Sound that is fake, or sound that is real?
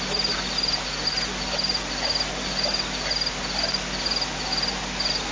real